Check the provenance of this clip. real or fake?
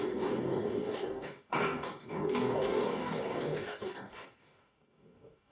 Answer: fake